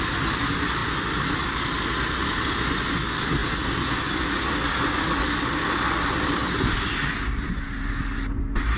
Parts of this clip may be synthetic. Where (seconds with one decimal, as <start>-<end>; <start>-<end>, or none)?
none